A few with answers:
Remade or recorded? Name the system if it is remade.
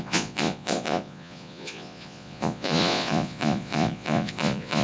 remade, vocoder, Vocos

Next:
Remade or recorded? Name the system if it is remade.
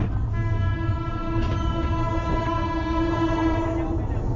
recorded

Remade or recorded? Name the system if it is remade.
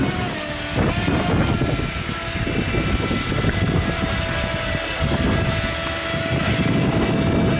recorded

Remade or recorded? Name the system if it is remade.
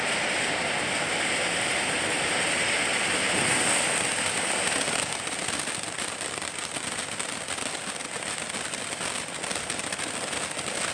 recorded